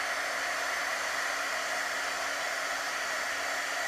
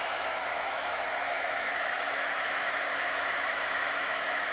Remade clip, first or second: second